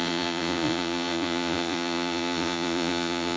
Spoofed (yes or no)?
yes